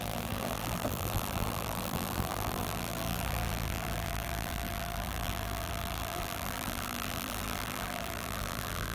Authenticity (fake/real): fake